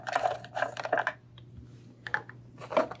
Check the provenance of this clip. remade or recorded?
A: recorded